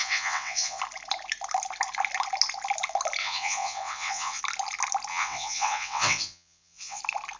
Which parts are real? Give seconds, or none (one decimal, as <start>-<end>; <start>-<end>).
0.8-3.2; 4.4-5.1; 7.0-7.4